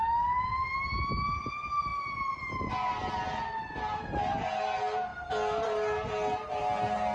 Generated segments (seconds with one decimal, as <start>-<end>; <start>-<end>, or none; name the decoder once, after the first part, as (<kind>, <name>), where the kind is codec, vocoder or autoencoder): none